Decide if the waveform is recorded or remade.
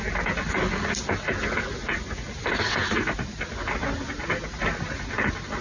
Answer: recorded